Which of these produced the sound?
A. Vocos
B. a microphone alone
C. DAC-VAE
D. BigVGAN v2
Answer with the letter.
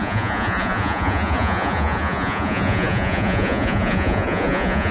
A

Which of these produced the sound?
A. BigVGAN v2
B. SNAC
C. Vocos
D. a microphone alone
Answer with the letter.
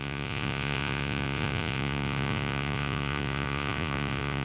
C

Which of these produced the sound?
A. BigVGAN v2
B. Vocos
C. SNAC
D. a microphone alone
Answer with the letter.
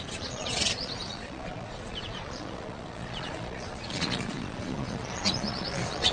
B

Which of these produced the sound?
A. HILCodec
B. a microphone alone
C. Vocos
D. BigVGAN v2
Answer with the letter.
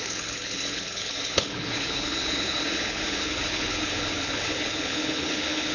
A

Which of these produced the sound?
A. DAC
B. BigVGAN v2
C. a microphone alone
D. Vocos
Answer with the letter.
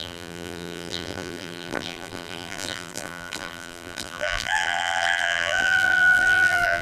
B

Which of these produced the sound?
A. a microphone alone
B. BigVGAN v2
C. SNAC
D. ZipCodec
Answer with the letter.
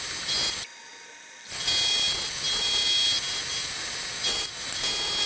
A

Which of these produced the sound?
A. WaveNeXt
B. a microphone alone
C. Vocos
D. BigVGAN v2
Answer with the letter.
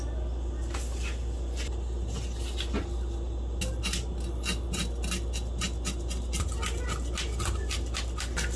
B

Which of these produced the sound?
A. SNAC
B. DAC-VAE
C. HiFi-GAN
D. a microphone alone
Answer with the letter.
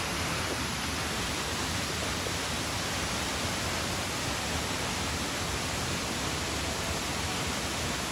D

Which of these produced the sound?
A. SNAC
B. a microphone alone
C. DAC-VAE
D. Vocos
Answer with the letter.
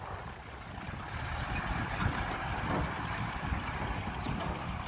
B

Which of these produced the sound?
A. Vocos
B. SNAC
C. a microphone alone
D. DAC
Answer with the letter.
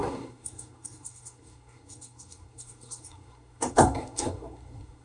B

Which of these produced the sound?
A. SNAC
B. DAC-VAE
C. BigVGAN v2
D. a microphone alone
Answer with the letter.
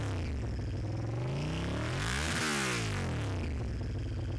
D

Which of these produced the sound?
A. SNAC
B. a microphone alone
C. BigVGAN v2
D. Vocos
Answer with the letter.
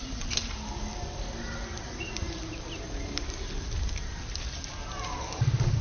B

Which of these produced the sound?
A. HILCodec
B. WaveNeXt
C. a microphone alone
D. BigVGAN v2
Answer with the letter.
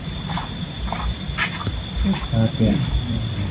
D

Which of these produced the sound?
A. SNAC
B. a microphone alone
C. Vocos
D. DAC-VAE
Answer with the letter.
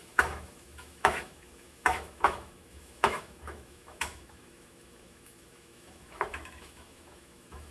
D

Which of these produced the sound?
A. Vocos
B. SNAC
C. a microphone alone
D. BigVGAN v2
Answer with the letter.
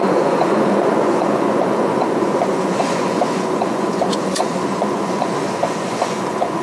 A